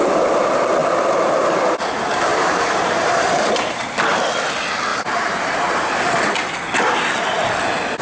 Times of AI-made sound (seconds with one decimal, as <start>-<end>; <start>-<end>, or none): 2.3-3.5; 4.9-5.6